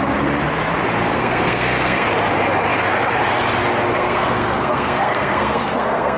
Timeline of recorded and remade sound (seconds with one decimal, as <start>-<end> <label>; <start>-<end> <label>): 0.0-1.1 recorded; 1.1-2.1 remade; 2.1-3.9 recorded; 3.9-6.2 remade